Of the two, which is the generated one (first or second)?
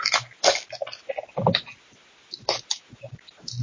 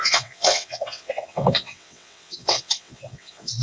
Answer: second